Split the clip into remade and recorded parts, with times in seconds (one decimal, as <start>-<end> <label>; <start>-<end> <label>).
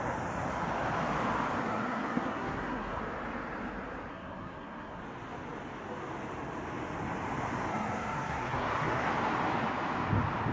0.0-1.6 recorded; 1.6-3.0 remade; 3.0-4.1 recorded; 4.1-5.0 remade; 5.0-7.7 recorded; 7.7-9.1 remade; 9.1-10.5 recorded